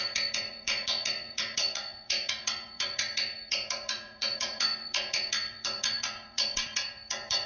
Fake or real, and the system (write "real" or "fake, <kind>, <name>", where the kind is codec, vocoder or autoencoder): fake, vocoder, Vocos